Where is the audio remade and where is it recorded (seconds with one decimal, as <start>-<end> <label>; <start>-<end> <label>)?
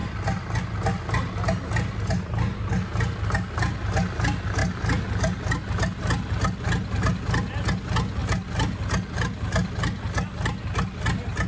0.0-11.5 recorded